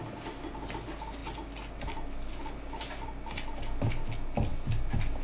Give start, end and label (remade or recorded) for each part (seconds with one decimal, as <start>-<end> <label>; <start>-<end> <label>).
0.0-5.2 recorded